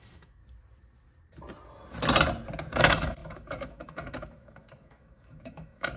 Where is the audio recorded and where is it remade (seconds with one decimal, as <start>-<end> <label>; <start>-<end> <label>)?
0.0-0.4 remade; 0.4-2.8 recorded; 2.8-6.0 remade